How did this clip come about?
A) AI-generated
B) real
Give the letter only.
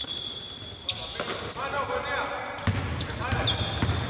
B